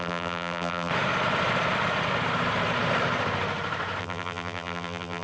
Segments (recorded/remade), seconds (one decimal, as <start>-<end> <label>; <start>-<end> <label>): 0.0-0.9 remade; 0.9-4.0 recorded; 4.0-5.2 remade